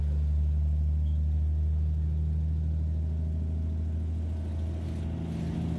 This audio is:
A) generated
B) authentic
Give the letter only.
B